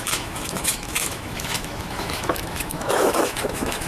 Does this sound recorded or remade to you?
remade